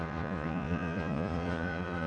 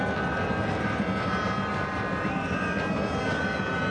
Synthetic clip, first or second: first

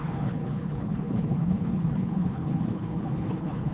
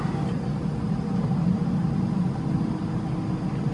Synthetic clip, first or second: first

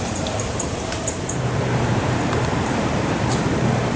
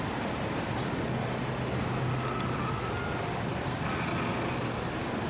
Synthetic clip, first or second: first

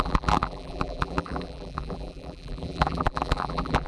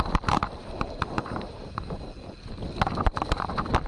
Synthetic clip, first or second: first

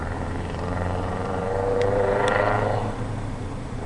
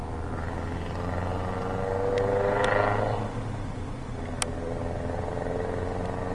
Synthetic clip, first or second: first